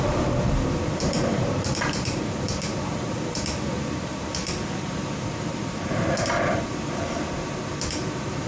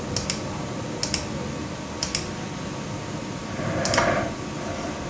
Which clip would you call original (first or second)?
second